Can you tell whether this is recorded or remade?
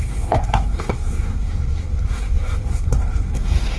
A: remade